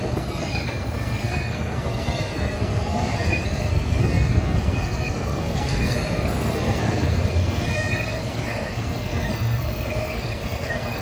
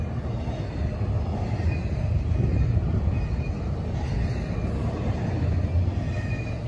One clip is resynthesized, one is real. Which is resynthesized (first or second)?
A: first